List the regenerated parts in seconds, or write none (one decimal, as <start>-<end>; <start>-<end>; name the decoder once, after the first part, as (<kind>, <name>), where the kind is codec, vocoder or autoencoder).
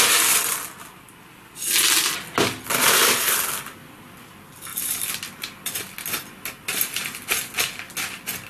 none